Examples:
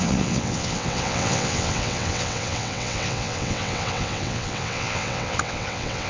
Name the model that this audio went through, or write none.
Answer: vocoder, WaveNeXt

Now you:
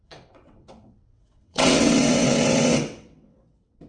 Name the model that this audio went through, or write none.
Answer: vocoder, WaveNeXt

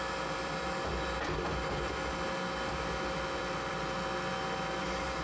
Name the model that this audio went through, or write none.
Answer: vocoder, BigVGAN v2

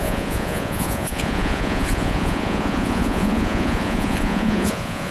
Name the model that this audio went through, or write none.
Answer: vocoder, Vocos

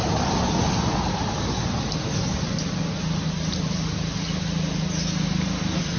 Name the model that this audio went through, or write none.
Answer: none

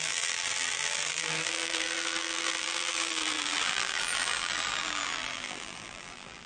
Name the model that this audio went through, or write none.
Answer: vocoder, BigVGAN v2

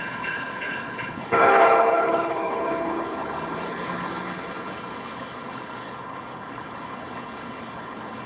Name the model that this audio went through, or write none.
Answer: codec, HILCodec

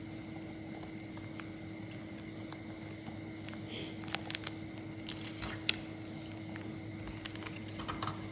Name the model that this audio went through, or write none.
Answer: none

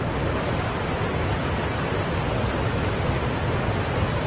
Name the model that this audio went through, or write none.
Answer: none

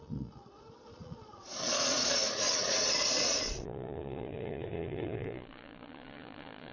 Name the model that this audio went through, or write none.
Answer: vocoder, Vocos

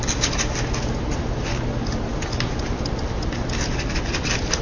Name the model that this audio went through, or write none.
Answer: none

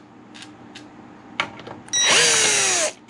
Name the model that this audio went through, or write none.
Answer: none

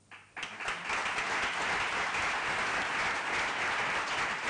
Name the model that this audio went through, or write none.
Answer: none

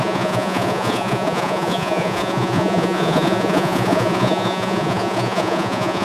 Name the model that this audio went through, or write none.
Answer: vocoder, Vocos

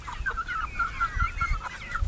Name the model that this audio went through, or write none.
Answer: none